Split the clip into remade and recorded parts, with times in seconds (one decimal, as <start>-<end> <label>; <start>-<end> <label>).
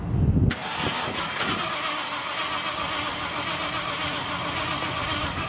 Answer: 0.0-5.5 recorded